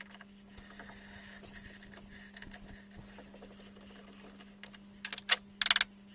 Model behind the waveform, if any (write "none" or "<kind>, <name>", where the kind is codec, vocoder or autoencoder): none